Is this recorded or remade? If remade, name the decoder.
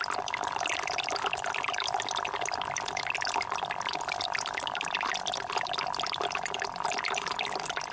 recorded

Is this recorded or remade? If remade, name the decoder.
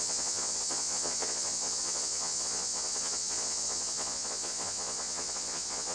remade, vocoder, Vocos